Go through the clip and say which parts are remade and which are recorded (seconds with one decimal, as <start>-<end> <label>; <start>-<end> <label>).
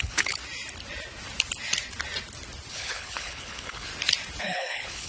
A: 0.0-0.4 remade; 0.4-2.7 recorded; 2.7-3.9 remade; 3.9-4.4 recorded; 4.4-5.1 remade